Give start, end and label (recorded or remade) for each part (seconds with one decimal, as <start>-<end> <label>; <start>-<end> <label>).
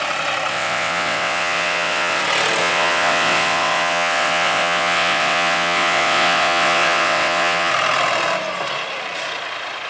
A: 0.0-0.5 recorded; 0.5-2.2 remade; 2.2-2.6 recorded; 2.6-7.7 remade; 7.7-9.9 recorded